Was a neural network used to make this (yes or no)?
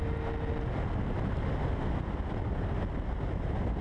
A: no